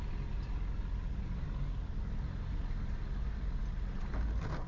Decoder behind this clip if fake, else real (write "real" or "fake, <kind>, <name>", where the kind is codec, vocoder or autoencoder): real